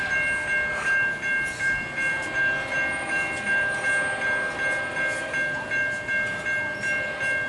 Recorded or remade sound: recorded